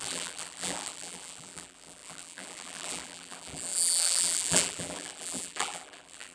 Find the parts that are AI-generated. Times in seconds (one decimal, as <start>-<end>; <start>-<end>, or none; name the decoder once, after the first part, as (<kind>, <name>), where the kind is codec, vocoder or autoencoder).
0.0-6.3 (vocoder, BigVGAN v2)